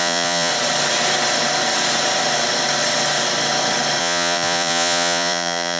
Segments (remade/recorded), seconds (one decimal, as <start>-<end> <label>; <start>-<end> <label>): 0.0-0.5 remade; 0.5-4.0 recorded; 4.0-5.8 remade